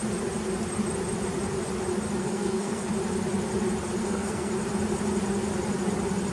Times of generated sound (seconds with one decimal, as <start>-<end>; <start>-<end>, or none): 2.2-2.9; 4.0-4.5